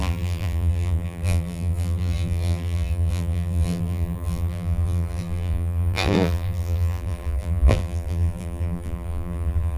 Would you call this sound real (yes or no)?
no